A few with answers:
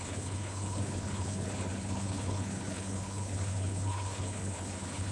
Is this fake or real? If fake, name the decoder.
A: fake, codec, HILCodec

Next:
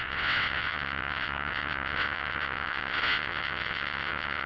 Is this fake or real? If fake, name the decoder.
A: fake, vocoder, WaveNeXt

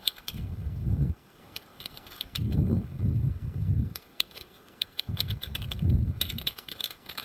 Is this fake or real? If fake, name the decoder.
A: fake, codec, SNAC